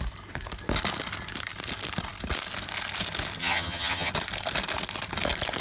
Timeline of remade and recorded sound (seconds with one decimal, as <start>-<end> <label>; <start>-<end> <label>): 0.0-3.4 recorded; 3.4-4.1 remade; 4.1-5.6 recorded